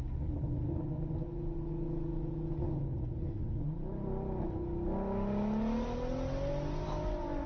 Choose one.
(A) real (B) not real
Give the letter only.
A